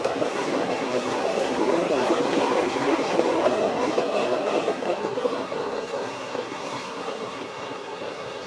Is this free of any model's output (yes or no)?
no